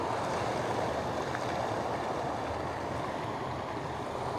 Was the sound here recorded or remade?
recorded